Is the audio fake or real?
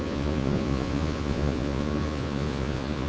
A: fake